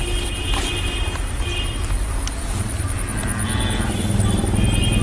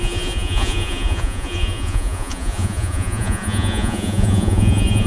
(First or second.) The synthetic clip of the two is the second